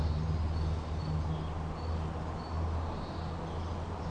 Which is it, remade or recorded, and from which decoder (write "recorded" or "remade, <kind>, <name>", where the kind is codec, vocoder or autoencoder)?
recorded